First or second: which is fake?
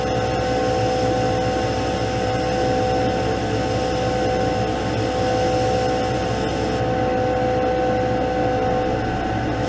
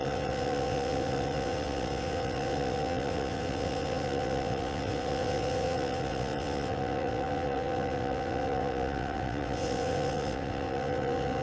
second